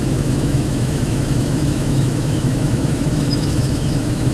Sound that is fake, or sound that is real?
fake